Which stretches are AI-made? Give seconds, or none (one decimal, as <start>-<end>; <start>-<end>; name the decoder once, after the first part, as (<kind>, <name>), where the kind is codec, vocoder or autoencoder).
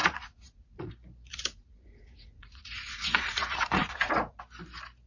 0.0-0.9 (vocoder, Vocos); 1.3-4.4